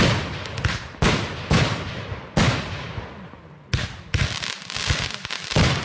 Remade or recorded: recorded